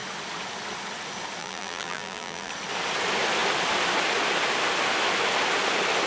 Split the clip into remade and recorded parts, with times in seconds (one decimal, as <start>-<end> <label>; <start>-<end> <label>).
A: 0.0-1.4 recorded; 1.4-2.5 remade; 2.5-6.1 recorded